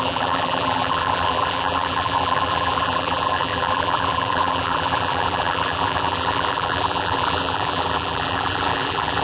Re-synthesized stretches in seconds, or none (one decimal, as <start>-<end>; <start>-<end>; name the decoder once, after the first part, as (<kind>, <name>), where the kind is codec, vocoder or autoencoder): 0.0-9.2 (vocoder, BigVGAN v2)